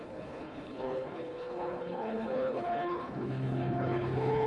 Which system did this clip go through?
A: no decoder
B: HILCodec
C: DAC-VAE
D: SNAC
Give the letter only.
B